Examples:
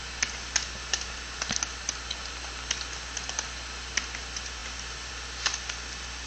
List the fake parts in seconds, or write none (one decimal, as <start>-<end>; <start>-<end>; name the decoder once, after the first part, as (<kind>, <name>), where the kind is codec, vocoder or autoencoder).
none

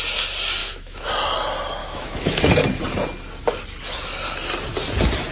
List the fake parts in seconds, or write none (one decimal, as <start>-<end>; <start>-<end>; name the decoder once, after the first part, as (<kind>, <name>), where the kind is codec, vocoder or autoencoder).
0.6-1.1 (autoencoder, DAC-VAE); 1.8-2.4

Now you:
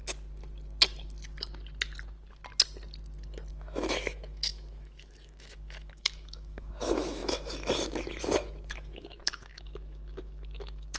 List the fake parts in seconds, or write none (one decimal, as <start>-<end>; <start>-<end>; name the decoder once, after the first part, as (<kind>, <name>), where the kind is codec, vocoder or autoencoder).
3.5-11.0 (autoencoder, DAC-VAE)